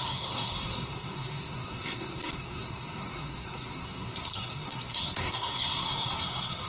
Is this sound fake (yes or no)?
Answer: yes